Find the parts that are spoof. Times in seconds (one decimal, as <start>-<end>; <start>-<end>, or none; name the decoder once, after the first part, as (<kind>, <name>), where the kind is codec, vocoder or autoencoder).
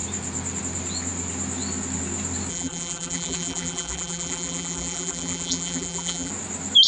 2.5-6.3 (vocoder, BigVGAN v2)